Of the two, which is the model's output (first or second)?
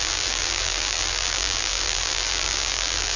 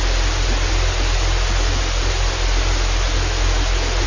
first